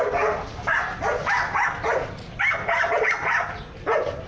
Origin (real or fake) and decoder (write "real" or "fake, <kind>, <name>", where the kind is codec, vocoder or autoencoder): real